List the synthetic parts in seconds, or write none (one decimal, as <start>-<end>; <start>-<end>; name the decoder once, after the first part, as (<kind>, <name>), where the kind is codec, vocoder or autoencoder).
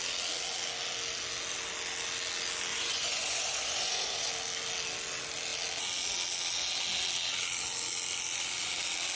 2.7-4.3 (vocoder, Vocos)